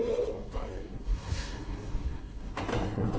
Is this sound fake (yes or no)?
yes